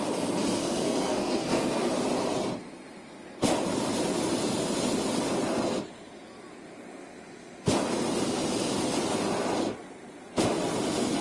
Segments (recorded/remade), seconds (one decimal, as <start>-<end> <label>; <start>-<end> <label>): 0.0-0.6 recorded; 0.6-1.9 remade; 1.9-11.2 recorded

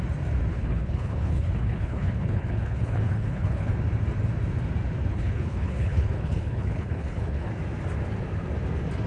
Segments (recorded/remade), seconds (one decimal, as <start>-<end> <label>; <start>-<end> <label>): 0.0-0.5 recorded; 0.5-3.7 remade; 3.7-5.1 recorded; 5.1-7.5 remade; 7.5-9.1 recorded

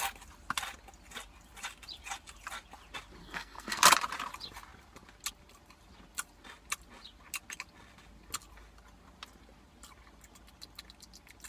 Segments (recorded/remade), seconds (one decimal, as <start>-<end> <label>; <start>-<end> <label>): 0.0-3.2 recorded; 3.2-3.8 remade; 3.8-11.5 recorded